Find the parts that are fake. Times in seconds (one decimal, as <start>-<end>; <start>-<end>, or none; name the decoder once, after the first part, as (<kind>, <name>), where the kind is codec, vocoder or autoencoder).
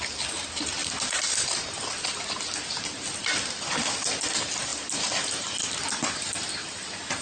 none